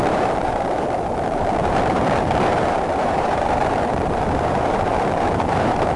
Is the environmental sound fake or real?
fake